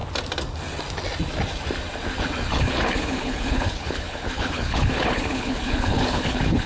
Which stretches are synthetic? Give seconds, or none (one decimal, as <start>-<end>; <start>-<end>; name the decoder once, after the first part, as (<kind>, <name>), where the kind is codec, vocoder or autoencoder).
2.5-6.7 (codec, HILCodec)